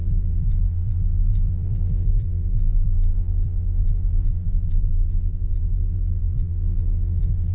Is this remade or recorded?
remade